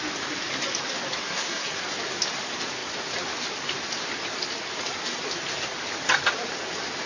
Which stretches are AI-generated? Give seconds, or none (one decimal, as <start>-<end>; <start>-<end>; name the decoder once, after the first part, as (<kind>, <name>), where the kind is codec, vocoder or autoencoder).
1.2-1.8 (codec, SNAC)